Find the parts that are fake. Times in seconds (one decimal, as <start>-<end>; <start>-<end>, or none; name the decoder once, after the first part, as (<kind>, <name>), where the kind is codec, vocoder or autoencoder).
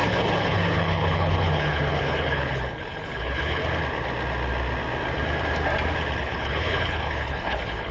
0.0-3.6 (codec, HILCodec); 6.2-7.9